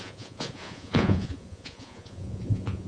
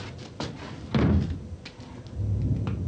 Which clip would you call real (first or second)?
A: second